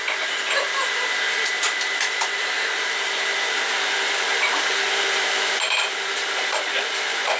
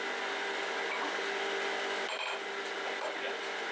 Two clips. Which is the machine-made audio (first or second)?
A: first